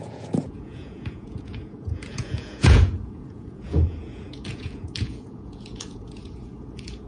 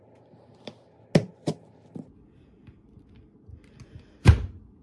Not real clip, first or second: first